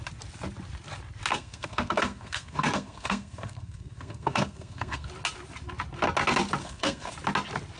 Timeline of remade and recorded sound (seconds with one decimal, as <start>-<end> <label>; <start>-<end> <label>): 0.0-1.3 recorded; 1.3-5.1 remade; 5.1-6.6 recorded; 6.6-7.1 remade; 7.1-7.8 recorded